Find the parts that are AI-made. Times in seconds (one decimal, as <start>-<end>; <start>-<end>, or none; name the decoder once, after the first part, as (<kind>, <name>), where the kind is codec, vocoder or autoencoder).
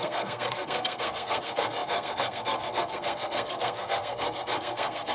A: 0.0-5.1 (codec, SNAC)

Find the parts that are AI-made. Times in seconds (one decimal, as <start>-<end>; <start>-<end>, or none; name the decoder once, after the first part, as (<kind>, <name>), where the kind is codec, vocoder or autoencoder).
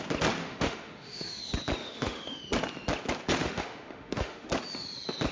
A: 0.4-1.4 (autoencoder, DAC-VAE); 1.8-2.4; 3.4-4.5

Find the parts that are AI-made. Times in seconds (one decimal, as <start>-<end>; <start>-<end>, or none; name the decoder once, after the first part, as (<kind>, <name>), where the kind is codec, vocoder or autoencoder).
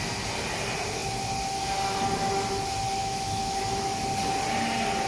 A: 3.0-3.6 (autoencoder, DAC-VAE)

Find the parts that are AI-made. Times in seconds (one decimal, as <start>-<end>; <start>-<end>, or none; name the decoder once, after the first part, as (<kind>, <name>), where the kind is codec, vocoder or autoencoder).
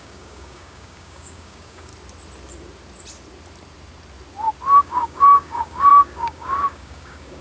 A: 0.0-1.9 (codec, DAC); 4.8-7.4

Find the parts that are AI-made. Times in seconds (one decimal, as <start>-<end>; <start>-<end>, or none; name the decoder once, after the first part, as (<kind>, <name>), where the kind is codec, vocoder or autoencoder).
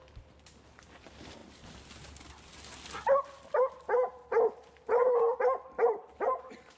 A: none